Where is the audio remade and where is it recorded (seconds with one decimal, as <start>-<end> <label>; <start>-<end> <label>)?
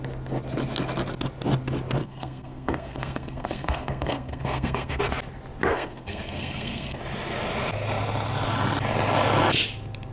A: 0.0-2.0 recorded; 2.0-5.0 remade; 5.0-5.7 recorded; 5.7-7.0 remade; 7.0-10.1 recorded